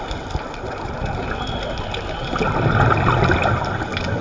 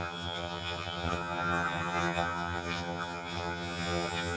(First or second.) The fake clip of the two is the second